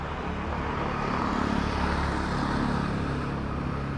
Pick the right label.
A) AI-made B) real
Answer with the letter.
B